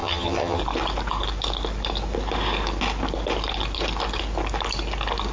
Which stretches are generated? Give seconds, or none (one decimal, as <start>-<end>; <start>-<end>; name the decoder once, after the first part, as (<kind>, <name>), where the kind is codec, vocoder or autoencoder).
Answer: 0.0-0.6 (vocoder, HiFi-GAN)